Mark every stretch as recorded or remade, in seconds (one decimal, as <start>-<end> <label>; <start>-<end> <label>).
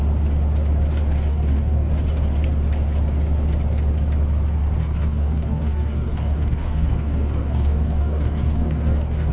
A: 0.0-1.3 recorded; 1.3-1.9 remade; 1.9-4.8 recorded; 4.8-9.3 remade